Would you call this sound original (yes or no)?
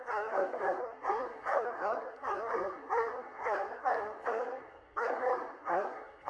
no